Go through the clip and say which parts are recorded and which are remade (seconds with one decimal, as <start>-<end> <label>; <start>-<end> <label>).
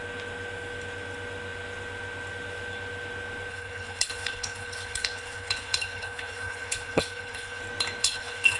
0.0-3.5 recorded; 3.5-7.6 remade; 7.6-8.0 recorded; 8.0-8.6 remade